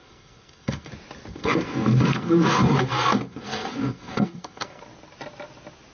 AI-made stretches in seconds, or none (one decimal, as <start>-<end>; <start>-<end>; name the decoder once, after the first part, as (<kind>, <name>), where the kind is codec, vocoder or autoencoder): 0.0-0.9 (codec, SNAC); 1.3-4.8

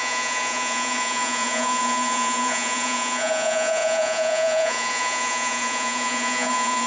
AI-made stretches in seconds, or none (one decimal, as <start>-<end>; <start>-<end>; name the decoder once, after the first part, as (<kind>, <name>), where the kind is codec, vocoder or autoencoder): 0.0-6.9 (vocoder, Vocos)

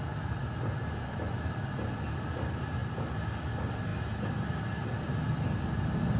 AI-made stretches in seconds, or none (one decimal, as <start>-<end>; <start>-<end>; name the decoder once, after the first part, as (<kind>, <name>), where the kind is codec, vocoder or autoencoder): none

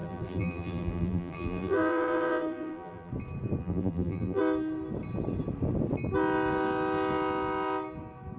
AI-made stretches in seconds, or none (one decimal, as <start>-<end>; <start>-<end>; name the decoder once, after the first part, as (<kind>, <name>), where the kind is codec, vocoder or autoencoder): 0.0-3.1 (vocoder, BigVGAN v2); 3.6-4.4

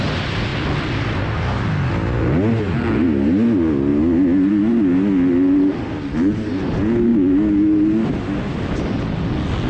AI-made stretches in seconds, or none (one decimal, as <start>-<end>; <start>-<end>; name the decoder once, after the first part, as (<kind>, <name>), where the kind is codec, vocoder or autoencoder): none

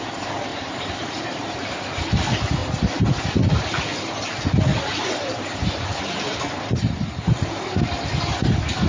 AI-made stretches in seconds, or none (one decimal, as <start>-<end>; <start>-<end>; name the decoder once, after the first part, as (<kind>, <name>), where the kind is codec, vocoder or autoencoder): 0.5-2.0 (vocoder, BigVGAN v2); 2.6-3.3; 4.7-7.6

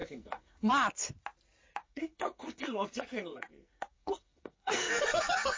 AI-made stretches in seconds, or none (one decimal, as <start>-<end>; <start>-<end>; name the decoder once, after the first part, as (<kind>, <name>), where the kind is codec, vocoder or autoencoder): 0.0-0.7 (codec, SNAC); 1.8-5.6